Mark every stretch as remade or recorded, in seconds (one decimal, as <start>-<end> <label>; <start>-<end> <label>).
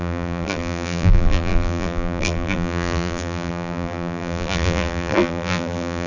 0.0-6.1 remade